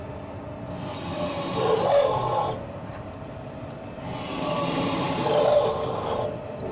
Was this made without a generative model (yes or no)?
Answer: yes